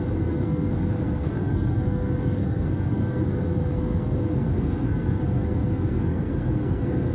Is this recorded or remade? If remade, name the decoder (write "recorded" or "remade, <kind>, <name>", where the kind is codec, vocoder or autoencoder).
remade, codec, SNAC